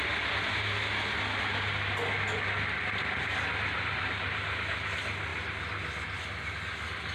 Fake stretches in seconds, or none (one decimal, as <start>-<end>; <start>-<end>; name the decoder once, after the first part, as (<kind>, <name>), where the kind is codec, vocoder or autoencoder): 5.3-6.2 (vocoder, BigVGAN v2)